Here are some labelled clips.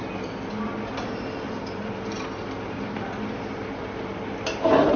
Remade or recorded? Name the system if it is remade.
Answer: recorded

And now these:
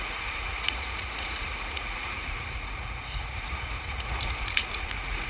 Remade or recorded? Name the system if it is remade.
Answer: remade, vocoder, Vocos